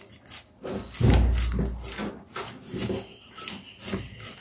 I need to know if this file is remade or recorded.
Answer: recorded